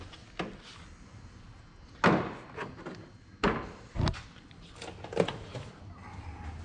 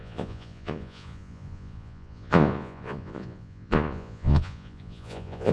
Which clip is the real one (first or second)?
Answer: first